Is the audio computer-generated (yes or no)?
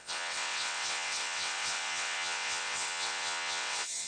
yes